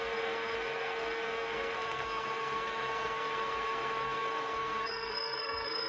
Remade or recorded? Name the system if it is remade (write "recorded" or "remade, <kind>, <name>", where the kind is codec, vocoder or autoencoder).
remade, codec, SNAC